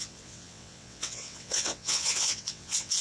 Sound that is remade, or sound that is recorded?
remade